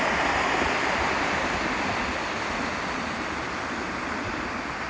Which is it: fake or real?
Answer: real